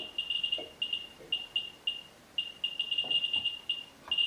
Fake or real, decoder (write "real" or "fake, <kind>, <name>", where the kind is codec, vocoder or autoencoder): real